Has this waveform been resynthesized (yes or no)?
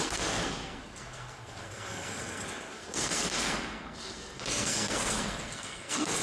yes